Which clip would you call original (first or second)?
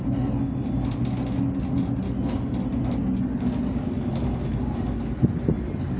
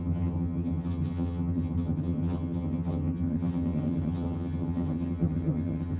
first